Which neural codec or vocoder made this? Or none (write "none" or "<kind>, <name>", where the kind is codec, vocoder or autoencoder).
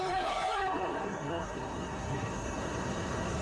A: codec, SNAC